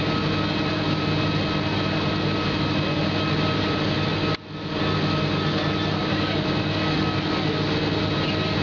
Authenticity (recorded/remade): recorded